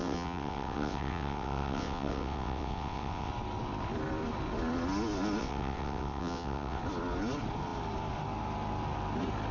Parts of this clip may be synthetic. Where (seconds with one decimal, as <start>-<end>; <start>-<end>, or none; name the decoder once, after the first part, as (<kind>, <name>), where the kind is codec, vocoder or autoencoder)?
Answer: 0.0-3.3 (vocoder, WaveNeXt); 5.4-6.8